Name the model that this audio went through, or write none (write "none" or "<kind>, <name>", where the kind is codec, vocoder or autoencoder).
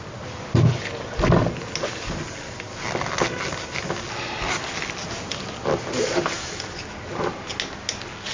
none